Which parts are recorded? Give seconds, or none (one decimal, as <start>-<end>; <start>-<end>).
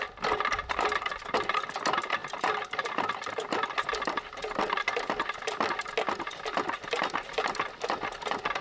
none